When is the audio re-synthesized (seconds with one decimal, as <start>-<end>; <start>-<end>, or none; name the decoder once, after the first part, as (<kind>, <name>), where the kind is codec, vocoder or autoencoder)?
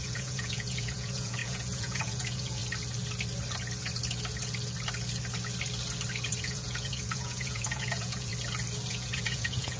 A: 0.0-2.6 (vocoder, Vocos); 6.4-8.3; 8.9-9.8